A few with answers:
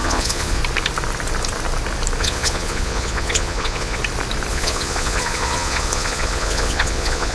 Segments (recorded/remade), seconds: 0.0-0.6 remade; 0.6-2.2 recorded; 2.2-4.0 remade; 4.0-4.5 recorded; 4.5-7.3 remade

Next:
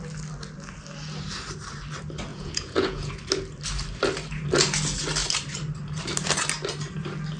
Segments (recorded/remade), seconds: 0.0-2.3 recorded; 2.3-3.1 remade; 3.1-7.4 recorded

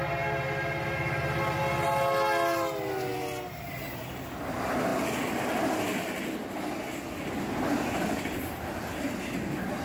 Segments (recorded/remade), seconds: 0.0-9.8 recorded

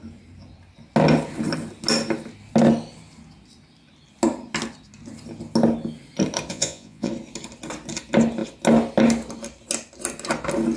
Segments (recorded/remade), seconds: 0.0-6.5 recorded; 6.5-7.1 remade; 7.1-10.8 recorded

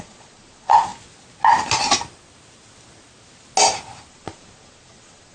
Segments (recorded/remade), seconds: 0.0-0.9 remade; 0.9-4.1 recorded; 4.1-5.3 remade

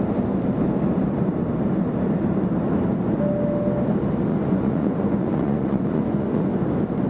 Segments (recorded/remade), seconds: 0.0-4.3 recorded; 4.3-6.5 remade; 6.5-7.1 recorded

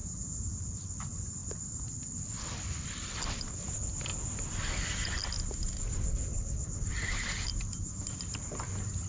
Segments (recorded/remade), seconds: 0.0-0.6 remade; 0.6-9.1 recorded

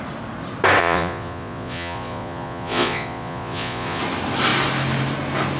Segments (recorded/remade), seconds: 0.0-0.8 recorded; 0.8-4.0 remade; 4.0-5.6 recorded